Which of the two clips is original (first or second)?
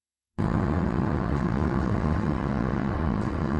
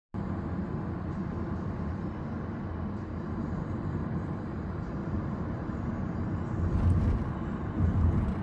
second